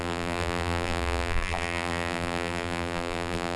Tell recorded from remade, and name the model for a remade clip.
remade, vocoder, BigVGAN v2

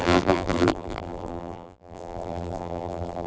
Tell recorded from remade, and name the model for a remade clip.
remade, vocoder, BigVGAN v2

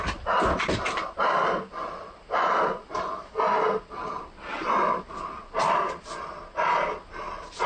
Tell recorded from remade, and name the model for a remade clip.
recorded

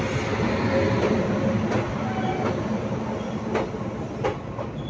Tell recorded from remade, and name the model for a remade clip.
recorded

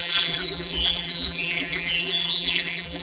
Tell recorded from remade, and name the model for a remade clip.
remade, vocoder, BigVGAN v2